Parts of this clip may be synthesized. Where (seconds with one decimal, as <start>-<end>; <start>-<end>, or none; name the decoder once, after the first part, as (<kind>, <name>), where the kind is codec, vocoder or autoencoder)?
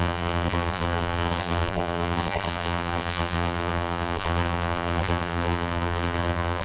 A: 0.0-6.6 (vocoder, BigVGAN v2)